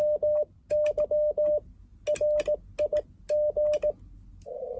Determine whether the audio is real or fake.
real